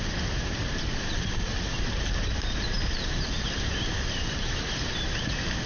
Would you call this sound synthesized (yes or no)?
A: yes